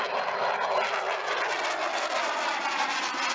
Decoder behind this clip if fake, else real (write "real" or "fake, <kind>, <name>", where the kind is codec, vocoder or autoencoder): real